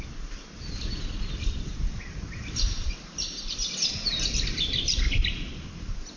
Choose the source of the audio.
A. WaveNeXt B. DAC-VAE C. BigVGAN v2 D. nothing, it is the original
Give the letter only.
C